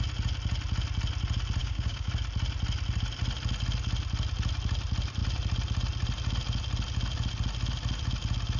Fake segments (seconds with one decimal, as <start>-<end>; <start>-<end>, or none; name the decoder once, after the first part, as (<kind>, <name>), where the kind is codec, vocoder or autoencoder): 1.6-2.1 (codec, DAC)